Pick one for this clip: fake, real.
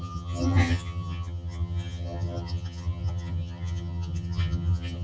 fake